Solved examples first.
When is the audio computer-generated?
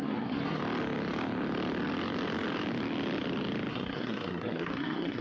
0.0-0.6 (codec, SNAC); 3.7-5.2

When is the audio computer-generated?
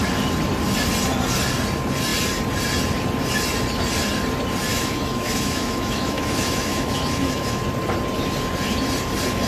4.7-7.6 (autoencoder, DAC-VAE)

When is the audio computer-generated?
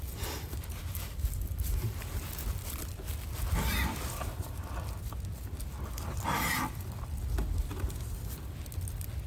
none